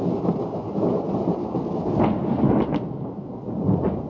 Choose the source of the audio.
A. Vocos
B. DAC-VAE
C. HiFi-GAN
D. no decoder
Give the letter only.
D